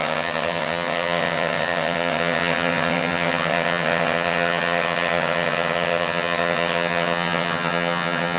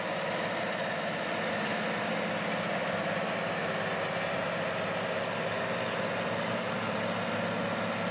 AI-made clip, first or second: first